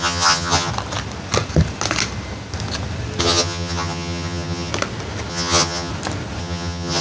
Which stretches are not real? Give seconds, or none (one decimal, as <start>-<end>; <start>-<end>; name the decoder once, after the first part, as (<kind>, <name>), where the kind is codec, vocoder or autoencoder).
0.0-0.7 (vocoder, HiFi-GAN); 3.2-4.7; 5.3-5.9; 6.4-7.0